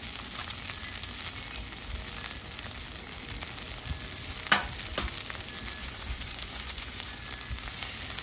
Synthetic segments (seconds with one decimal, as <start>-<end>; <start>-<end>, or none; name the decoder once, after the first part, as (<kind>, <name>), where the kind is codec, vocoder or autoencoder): 5.8-7.2 (vocoder, Vocos)